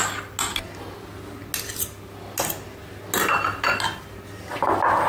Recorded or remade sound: recorded